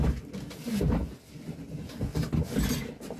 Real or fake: real